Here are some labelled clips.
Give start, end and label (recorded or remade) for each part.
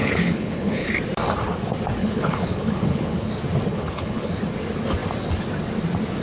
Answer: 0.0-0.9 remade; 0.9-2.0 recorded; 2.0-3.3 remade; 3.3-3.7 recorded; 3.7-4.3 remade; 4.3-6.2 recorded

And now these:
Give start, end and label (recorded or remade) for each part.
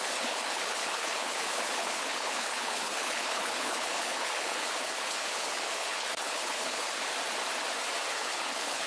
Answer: 0.0-7.1 remade; 7.1-8.1 recorded; 8.1-8.9 remade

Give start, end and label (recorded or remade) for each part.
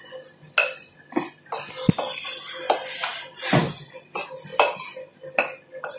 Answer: 0.0-6.0 recorded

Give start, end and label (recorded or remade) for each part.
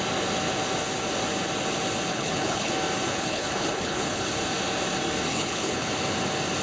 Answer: 0.0-2.1 recorded; 2.1-2.7 remade; 2.7-3.1 recorded; 3.1-4.3 remade; 4.3-5.3 recorded; 5.3-5.9 remade; 5.9-6.6 recorded